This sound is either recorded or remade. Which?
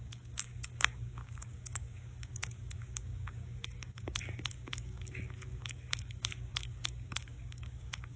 remade